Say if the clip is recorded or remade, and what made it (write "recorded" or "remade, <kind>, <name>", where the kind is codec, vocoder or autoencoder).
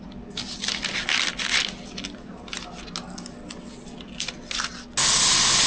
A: recorded